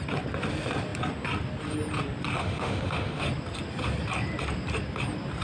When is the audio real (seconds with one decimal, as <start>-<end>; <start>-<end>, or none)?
0.0-2.4; 3.2-5.4